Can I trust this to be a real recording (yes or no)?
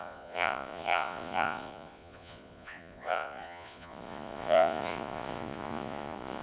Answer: no